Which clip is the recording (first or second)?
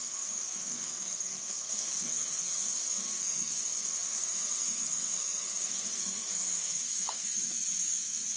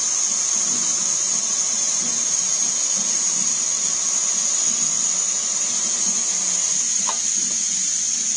second